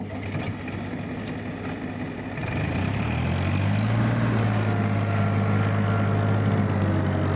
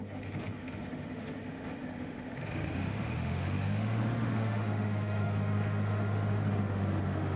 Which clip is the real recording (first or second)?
first